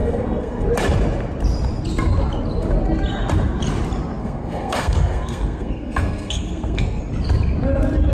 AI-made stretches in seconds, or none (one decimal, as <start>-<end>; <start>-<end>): 0.0-0.7; 4.2-7.0